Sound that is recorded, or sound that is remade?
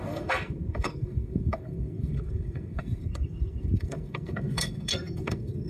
remade